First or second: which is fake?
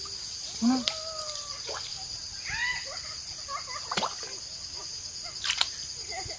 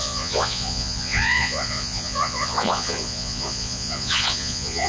second